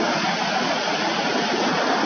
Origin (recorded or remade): recorded